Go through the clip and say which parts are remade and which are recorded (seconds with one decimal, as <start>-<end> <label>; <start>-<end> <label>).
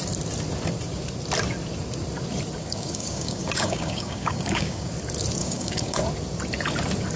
0.0-2.6 recorded; 2.6-4.9 remade; 4.9-5.4 recorded; 5.4-6.0 remade; 6.0-7.2 recorded